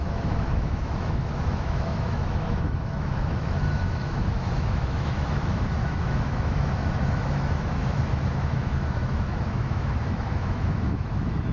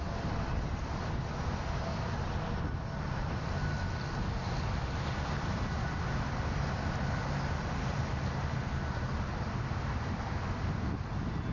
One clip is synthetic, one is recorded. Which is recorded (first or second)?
second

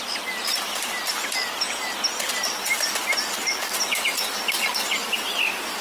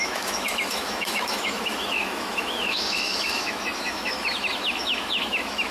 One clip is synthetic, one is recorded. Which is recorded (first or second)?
first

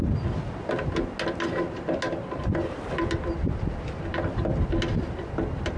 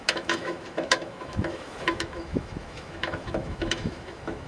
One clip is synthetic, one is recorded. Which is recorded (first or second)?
first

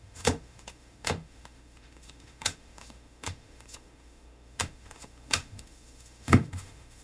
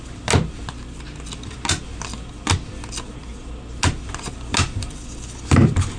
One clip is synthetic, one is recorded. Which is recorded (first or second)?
second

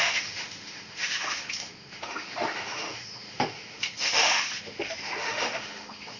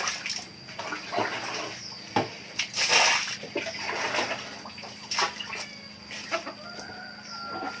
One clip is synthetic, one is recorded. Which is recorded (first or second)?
second